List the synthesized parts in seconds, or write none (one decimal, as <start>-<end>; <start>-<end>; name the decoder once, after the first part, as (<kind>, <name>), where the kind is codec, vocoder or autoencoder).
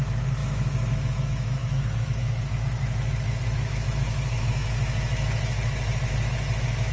0.0-6.9 (autoencoder, DAC-VAE)